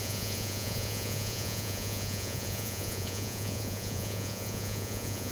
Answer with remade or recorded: remade